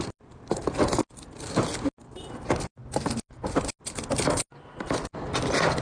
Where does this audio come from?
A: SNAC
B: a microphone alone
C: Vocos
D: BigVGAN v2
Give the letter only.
B